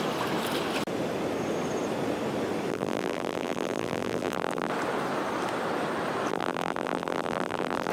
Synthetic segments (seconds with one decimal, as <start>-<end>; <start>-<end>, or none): 2.7-4.7; 6.3-7.9